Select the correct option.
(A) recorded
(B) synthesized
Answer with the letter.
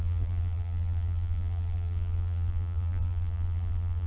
B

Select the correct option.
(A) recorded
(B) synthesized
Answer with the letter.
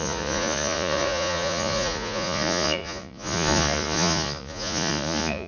B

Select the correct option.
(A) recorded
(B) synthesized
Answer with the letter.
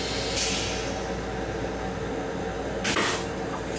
A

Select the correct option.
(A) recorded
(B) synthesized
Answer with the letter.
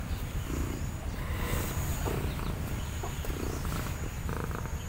A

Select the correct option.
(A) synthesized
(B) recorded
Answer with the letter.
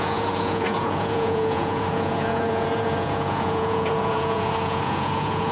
A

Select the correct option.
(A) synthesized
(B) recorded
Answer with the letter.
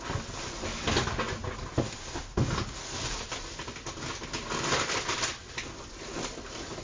B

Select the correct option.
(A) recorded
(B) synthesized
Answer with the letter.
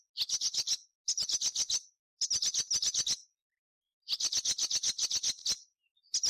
A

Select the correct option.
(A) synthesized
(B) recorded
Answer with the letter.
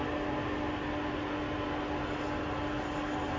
B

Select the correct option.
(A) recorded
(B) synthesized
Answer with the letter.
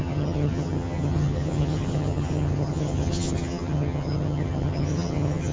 B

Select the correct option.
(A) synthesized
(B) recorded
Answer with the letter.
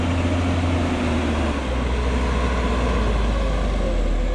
B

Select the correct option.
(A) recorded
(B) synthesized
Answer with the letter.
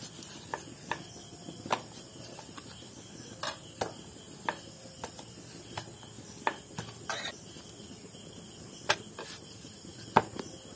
A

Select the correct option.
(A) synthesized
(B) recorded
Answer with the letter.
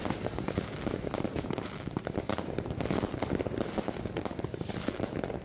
A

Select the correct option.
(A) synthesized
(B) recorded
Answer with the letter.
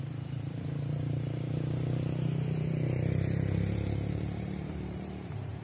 A